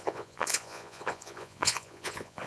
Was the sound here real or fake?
fake